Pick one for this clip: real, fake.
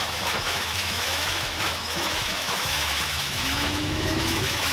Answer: fake